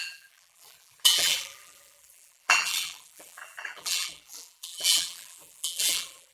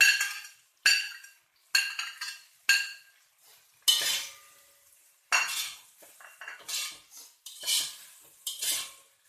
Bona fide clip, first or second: second